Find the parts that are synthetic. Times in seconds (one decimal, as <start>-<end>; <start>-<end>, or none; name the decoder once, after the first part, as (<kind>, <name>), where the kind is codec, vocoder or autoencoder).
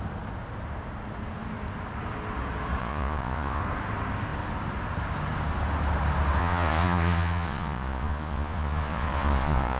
2.8-3.6 (vocoder, Vocos); 6.4-9.8